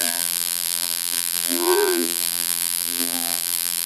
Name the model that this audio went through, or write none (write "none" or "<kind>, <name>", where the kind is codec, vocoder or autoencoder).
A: vocoder, BigVGAN v2